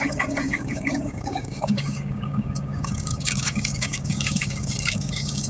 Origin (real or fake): fake